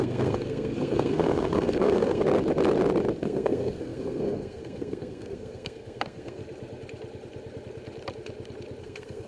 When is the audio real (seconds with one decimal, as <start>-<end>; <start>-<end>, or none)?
2.2-3.2; 6.4-8.8